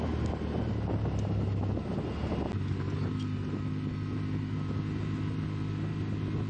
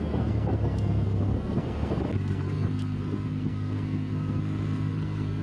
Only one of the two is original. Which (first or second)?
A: first